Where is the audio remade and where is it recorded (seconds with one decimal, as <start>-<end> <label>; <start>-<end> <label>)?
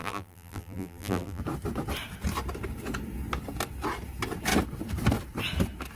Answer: 0.0-1.4 remade; 1.4-6.0 recorded